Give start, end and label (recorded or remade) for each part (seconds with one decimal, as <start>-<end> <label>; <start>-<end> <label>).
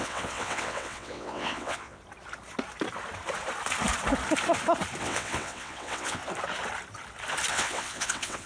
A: 0.0-2.0 remade; 2.0-5.0 recorded; 5.0-6.2 remade; 6.2-7.5 recorded; 7.5-8.5 remade